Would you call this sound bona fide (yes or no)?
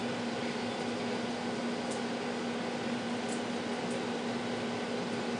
yes